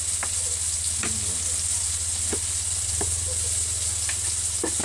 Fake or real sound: real